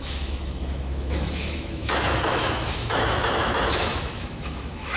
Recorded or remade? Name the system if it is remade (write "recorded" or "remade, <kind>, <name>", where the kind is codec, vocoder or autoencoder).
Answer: remade, autoencoder, DAC-VAE